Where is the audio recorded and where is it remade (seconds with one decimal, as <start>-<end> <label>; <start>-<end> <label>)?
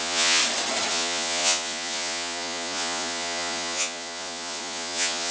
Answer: 0.0-0.4 remade; 0.4-0.9 recorded; 0.9-5.3 remade